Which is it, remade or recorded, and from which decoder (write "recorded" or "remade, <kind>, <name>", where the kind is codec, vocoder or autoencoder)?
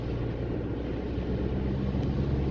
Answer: recorded